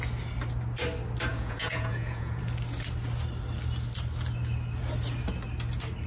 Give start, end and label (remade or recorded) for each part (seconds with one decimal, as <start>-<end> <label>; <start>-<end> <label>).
0.0-1.3 recorded; 1.3-2.4 remade; 2.4-6.1 recorded